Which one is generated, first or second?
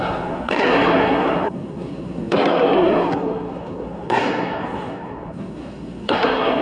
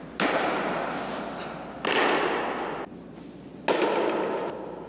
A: first